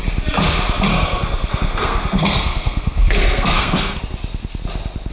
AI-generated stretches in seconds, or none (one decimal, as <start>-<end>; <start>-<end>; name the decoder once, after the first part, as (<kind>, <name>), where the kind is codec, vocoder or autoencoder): 0.9-4.0 (codec, SNAC)